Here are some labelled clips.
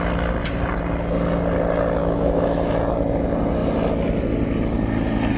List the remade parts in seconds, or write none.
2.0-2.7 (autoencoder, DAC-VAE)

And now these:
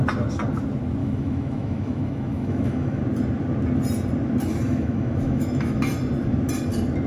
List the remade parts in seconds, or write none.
1.0-3.0 (autoencoder, DAC-VAE); 4.5-5.8

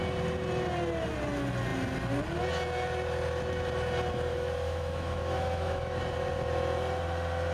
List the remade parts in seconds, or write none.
4.3-6.0 (autoencoder, DAC-VAE)

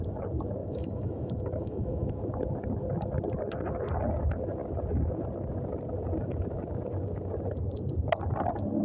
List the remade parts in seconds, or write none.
0.6-2.1 (autoencoder, DAC-VAE)

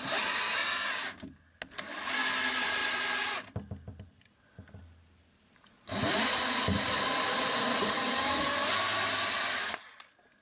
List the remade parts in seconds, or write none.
none

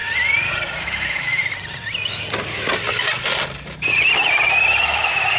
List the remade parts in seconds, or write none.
0.8-1.4 (autoencoder, DAC-VAE); 4.6-5.4